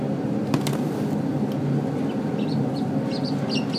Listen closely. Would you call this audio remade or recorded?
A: recorded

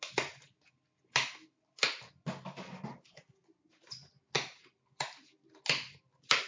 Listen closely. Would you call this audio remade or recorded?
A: recorded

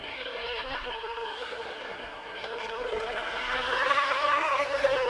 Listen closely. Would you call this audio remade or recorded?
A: remade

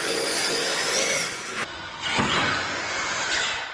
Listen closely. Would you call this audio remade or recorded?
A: remade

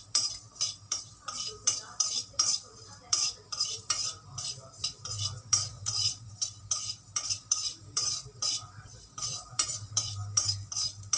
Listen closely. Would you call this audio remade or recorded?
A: remade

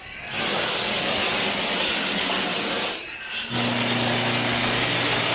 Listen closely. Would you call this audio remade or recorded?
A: recorded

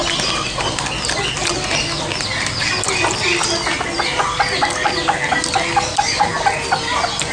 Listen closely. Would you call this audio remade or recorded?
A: recorded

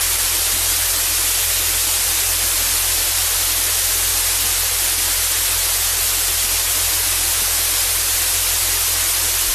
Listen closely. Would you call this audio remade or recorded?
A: recorded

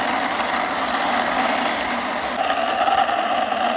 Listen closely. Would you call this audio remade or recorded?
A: recorded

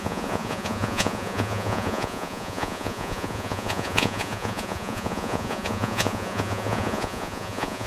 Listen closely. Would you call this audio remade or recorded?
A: remade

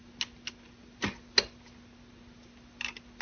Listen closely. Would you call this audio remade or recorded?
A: recorded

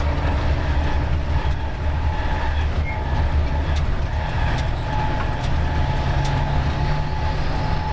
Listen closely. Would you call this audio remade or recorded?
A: recorded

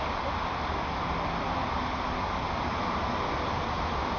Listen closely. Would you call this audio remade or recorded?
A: recorded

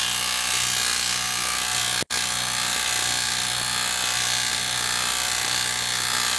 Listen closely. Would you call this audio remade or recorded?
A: recorded